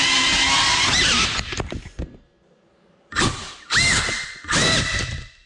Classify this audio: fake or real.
real